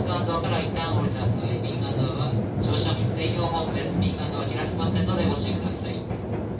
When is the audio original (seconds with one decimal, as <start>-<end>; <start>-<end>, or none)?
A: 0.0-6.6